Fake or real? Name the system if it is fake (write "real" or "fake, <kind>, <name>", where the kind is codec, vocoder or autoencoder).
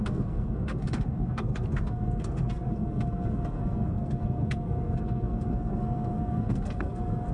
fake, codec, SNAC